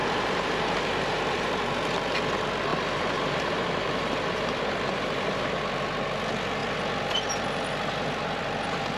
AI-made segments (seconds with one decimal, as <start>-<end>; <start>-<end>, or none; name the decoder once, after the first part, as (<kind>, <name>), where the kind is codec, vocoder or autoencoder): 0.0-1.5 (vocoder, BigVGAN v2); 2.7-5.6